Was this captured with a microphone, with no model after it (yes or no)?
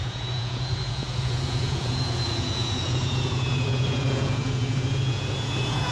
no